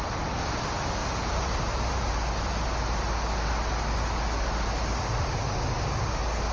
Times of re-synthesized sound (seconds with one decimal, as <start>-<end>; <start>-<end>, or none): 1.0-2.0